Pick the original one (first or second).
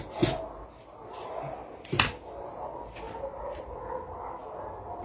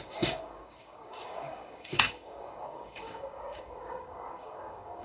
first